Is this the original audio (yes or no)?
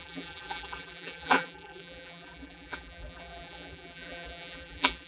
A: no